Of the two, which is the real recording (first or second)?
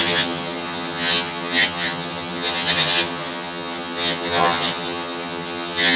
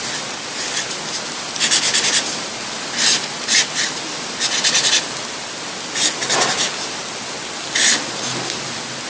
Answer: second